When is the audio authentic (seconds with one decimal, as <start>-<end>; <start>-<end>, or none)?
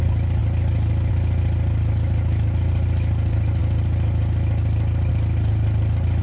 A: 0.0-6.2